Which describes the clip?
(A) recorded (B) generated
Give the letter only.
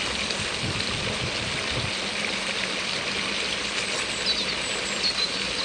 A